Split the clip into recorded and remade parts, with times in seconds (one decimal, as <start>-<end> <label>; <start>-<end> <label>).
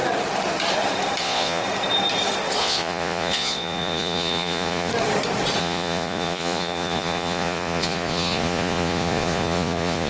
0.0-1.2 recorded; 1.2-1.6 remade; 1.6-2.6 recorded; 2.6-4.9 remade; 4.9-5.6 recorded; 5.6-10.1 remade